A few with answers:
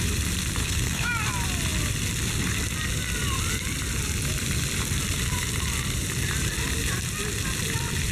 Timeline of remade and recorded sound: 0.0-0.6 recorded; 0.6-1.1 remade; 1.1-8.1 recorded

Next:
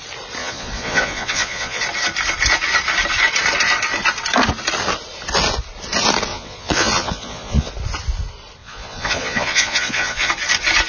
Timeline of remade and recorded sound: 0.0-0.4 recorded; 0.4-1.8 remade; 1.8-6.3 recorded; 6.3-7.7 remade; 7.7-8.6 recorded; 8.6-10.3 remade; 10.3-10.9 recorded